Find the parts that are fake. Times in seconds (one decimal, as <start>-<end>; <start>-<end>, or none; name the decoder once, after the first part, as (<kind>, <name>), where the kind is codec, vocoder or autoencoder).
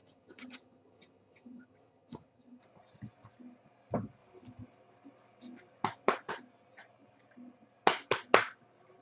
0.0-2.6 (vocoder, HiFi-GAN)